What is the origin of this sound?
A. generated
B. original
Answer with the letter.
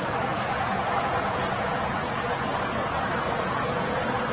A